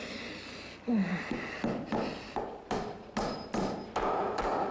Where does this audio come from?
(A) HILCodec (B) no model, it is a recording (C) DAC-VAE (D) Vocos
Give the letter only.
B